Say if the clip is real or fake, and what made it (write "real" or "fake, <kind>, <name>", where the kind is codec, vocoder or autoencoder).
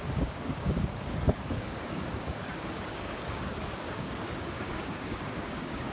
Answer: fake, codec, DAC